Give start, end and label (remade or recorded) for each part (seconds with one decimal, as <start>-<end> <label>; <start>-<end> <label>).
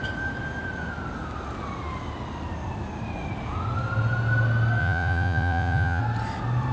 0.0-4.8 recorded; 4.8-6.0 remade; 6.0-6.7 recorded